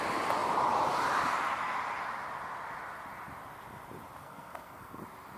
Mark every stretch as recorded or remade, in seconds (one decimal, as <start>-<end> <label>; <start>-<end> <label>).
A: 0.0-4.2 recorded; 4.2-5.0 remade; 5.0-5.4 recorded